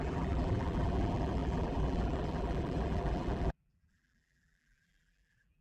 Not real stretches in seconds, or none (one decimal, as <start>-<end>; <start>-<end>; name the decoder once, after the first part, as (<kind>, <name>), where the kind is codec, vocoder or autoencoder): 0.0-5.6 (vocoder, BigVGAN v2)